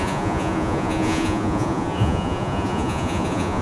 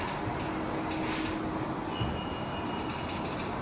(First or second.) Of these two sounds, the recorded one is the second